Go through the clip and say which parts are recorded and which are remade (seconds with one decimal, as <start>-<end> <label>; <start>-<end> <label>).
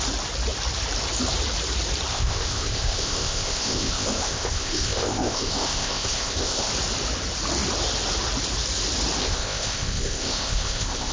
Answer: 0.0-2.1 recorded; 2.1-6.7 remade; 6.7-9.2 recorded; 9.2-11.1 remade